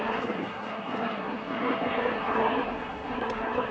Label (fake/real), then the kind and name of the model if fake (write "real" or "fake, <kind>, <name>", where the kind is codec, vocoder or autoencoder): fake, codec, SNAC